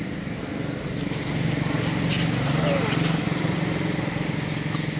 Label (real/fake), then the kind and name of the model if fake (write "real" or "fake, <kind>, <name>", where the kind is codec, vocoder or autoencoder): real